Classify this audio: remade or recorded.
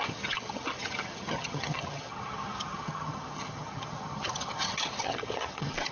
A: remade